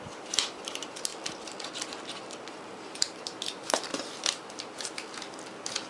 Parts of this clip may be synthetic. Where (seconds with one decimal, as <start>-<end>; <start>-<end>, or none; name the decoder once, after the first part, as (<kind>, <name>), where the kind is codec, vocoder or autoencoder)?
0.0-1.1 (vocoder, BigVGAN v2); 2.5-3.9